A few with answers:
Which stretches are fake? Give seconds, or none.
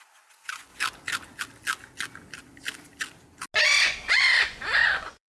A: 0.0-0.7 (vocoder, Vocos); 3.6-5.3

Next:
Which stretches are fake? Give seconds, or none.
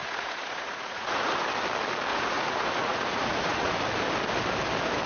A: 0.0-1.4 (vocoder, Vocos); 2.1-3.7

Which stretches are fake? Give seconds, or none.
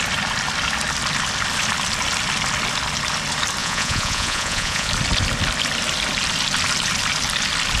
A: 3.6-4.9 (vocoder, Vocos)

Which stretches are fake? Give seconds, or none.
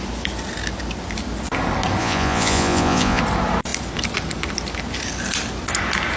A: 2.0-3.2 (vocoder, Vocos)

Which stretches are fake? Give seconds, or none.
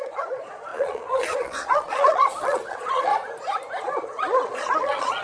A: 0.0-3.1 (vocoder, Vocos); 3.8-5.2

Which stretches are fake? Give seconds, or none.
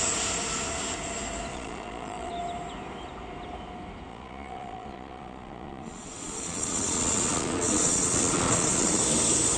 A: 1.5-2.3 (vocoder, Vocos); 4.1-9.0